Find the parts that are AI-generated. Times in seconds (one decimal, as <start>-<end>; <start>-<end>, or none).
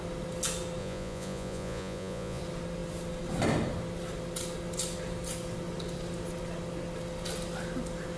0.8-2.4